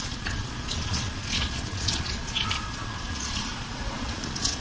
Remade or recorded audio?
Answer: remade